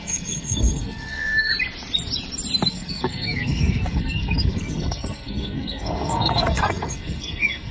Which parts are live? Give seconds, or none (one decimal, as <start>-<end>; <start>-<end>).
1.5-2.7